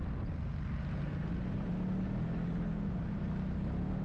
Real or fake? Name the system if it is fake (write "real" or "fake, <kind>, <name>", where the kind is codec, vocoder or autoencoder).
real